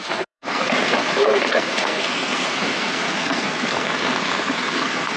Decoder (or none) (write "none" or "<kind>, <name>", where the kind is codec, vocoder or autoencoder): codec, SNAC